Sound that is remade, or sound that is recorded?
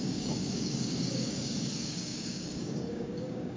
remade